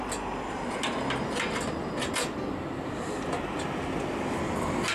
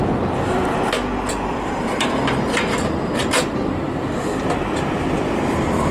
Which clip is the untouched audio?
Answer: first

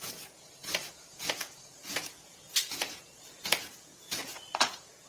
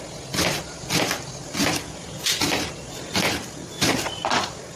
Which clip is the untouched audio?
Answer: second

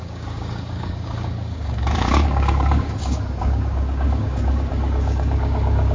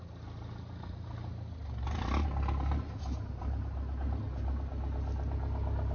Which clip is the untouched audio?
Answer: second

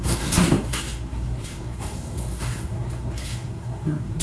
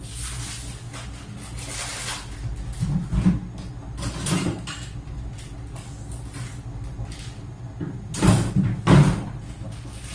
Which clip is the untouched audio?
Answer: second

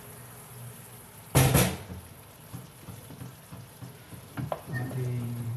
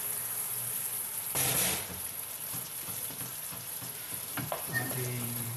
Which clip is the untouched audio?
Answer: first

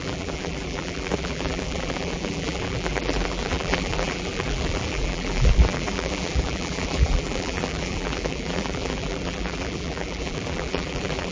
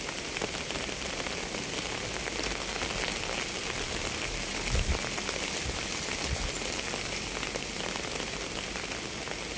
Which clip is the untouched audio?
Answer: second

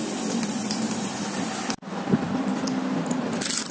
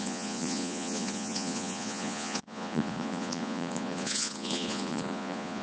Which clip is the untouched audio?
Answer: first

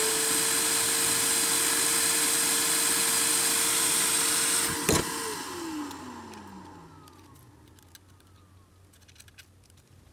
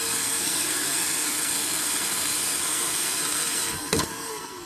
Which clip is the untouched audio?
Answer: first